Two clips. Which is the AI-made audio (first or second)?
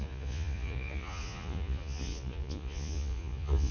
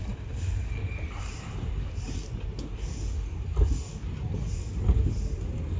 first